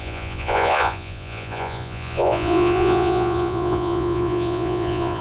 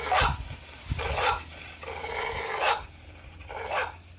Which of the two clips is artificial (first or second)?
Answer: first